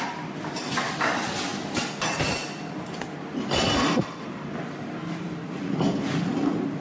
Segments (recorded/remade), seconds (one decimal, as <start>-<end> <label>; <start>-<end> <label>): 0.0-6.8 recorded